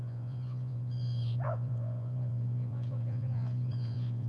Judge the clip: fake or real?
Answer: fake